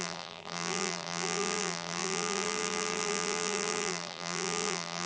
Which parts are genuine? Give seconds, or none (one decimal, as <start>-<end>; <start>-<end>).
none